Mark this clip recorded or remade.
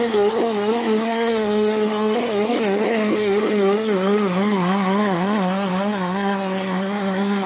remade